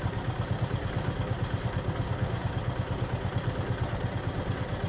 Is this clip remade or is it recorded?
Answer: recorded